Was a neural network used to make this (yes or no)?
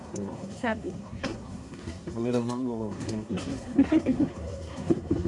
yes